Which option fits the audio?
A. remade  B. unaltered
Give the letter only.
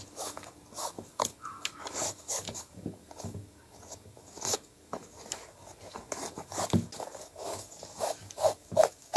A